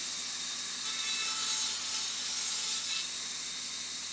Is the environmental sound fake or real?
real